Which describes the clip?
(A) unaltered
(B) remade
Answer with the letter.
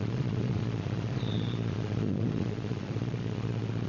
B